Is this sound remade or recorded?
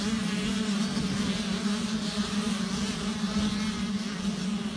recorded